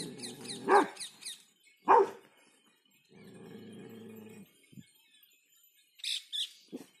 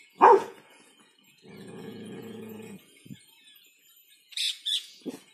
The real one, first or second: first